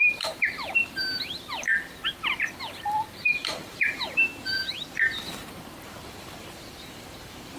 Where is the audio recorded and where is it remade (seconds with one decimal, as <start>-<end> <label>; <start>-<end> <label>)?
0.0-4.3 remade; 4.3-5.5 recorded; 5.5-7.6 remade